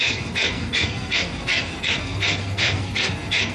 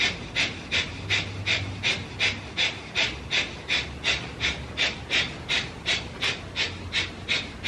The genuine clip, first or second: second